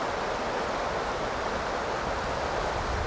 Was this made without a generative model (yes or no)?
yes